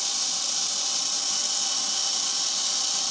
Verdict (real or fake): real